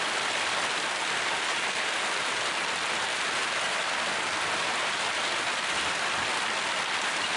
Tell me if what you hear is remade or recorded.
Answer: recorded